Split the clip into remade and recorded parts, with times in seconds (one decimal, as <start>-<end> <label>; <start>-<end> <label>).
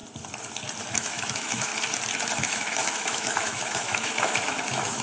0.0-0.9 recorded; 0.9-1.7 remade; 1.7-2.4 recorded; 2.4-5.0 remade